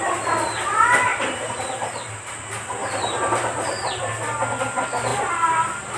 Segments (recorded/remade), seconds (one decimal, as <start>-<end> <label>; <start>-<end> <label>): 0.0-1.1 recorded; 1.1-2.3 remade; 2.3-2.8 recorded; 2.8-4.0 remade; 4.0-5.1 recorded; 5.1-6.0 remade